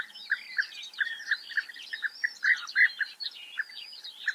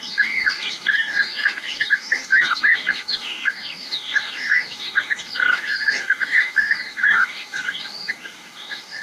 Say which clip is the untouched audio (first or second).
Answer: first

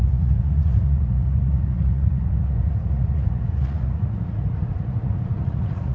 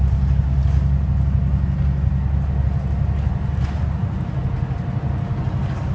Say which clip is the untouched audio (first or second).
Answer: second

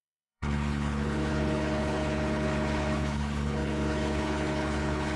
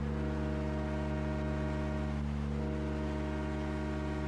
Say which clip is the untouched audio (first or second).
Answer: second